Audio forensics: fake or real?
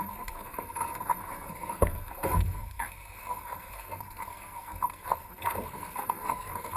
fake